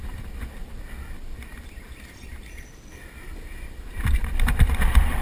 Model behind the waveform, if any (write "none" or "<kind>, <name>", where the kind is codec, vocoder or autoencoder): none